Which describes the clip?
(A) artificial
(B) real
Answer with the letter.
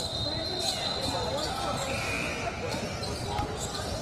B